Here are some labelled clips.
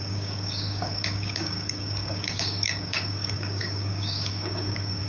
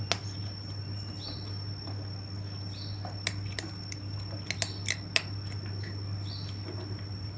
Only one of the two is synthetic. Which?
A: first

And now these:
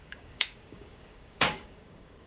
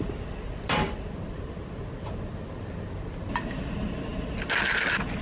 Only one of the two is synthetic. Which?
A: first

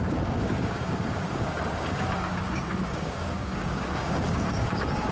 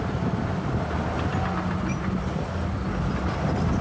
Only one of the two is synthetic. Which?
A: first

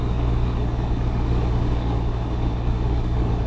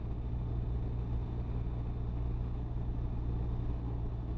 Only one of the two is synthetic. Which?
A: first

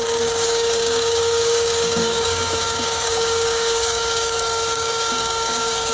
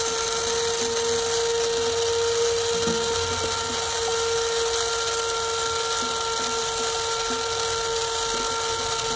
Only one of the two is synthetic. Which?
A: first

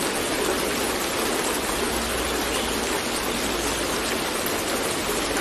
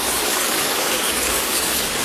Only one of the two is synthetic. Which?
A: second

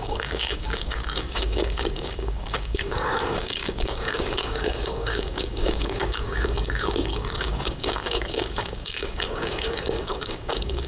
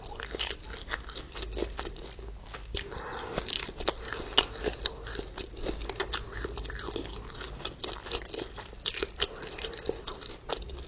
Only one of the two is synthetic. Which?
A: first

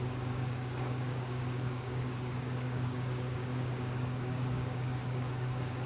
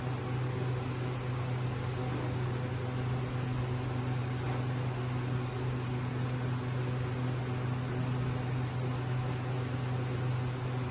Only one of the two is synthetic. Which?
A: first